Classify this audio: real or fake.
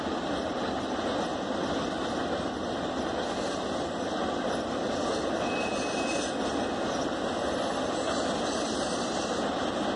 real